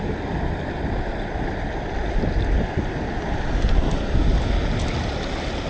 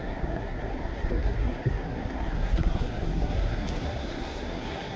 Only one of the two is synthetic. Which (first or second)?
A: second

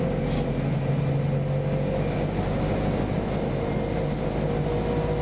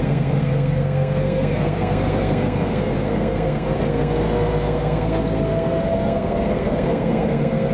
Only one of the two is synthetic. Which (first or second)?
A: second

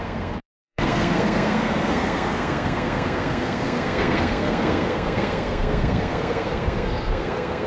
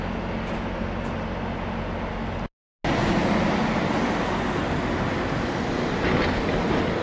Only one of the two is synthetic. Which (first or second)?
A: first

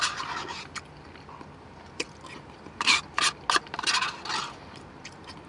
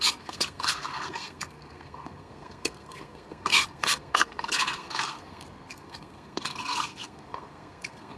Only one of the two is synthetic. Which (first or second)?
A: second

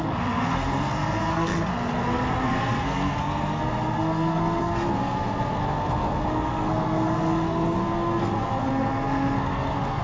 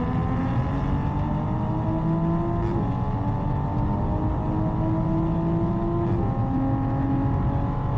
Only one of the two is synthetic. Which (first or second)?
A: first